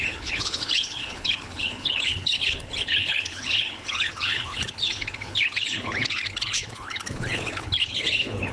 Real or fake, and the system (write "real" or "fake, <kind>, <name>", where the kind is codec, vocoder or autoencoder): fake, codec, HILCodec